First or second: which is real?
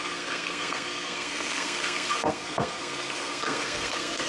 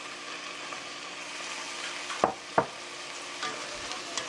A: second